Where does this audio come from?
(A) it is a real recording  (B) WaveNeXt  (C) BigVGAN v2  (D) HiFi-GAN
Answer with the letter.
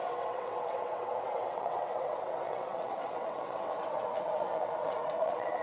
B